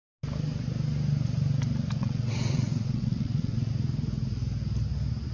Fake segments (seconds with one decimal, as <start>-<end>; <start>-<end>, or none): 2.0-3.7

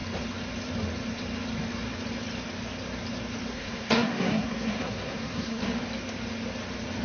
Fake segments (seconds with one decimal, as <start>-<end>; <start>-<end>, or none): 3.5-5.6

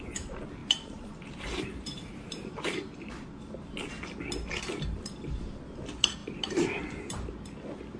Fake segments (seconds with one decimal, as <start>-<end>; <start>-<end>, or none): 0.6-3.1; 6.2-6.8

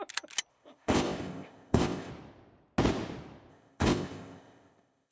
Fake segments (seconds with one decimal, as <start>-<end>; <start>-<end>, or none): 0.5-2.1; 3.5-5.1

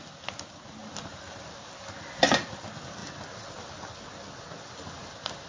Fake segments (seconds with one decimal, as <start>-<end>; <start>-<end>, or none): none

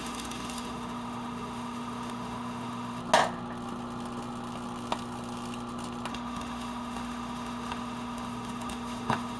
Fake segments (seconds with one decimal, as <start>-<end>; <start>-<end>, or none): 0.0-3.0; 6.1-9.4

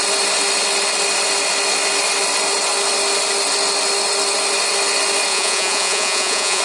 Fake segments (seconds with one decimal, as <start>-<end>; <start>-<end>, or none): 5.3-6.6